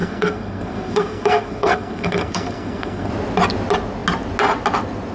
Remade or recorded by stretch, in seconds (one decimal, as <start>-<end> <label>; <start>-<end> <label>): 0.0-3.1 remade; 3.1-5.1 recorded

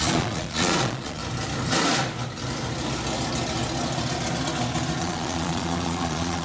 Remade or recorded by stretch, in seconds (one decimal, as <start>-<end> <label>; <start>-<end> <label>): 0.0-1.2 remade; 1.2-5.0 recorded; 5.0-6.4 remade

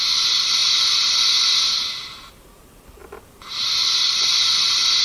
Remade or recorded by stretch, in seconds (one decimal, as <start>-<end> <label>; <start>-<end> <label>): 0.0-5.0 recorded

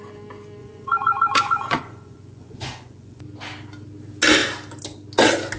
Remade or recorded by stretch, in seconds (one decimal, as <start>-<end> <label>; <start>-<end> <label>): 0.0-0.6 recorded; 0.6-3.2 remade; 3.2-5.6 recorded